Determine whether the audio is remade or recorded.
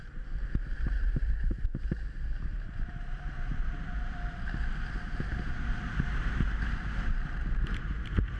recorded